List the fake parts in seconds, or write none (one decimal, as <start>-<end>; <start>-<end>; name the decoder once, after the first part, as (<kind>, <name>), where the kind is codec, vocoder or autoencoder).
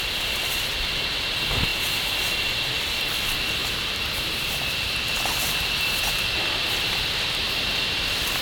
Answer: 3.6-5.3 (vocoder, BigVGAN v2)